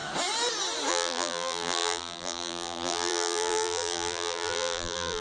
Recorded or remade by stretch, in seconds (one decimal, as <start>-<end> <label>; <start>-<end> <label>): 0.0-0.9 recorded; 0.9-5.2 remade

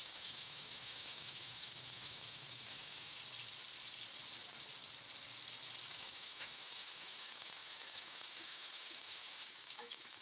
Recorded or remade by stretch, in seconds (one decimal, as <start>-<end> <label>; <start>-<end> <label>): 0.0-3.2 remade; 3.2-5.9 recorded; 5.9-10.2 remade

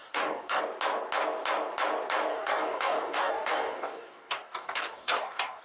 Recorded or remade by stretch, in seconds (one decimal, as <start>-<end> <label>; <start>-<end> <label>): 0.0-0.6 remade; 0.6-2.3 recorded; 2.3-5.6 remade